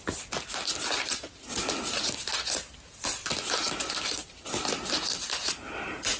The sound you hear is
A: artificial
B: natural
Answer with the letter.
B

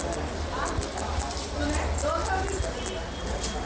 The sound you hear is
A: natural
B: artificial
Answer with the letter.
A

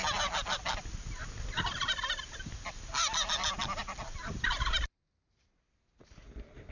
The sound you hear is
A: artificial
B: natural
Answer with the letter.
B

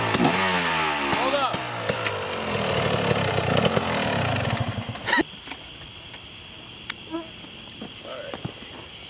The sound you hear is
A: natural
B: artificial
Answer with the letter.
A